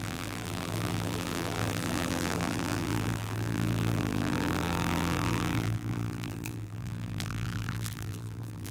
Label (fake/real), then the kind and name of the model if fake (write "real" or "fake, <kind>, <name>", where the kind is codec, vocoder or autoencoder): fake, vocoder, BigVGAN v2